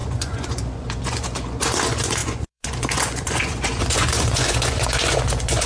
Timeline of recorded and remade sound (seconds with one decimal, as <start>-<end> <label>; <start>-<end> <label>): 0.0-5.7 remade